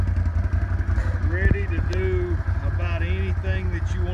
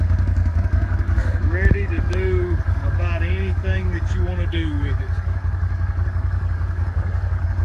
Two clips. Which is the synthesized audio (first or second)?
second